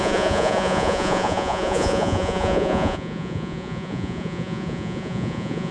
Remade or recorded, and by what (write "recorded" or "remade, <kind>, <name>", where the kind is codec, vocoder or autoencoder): remade, vocoder, Vocos